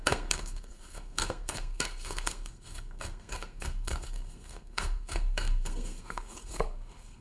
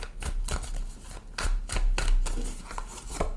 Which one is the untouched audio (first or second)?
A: second